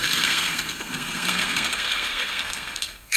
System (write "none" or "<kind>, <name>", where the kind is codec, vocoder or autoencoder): codec, SNAC